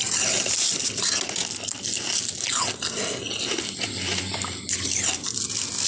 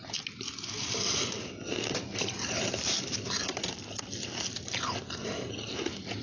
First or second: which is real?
first